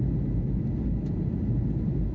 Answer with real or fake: real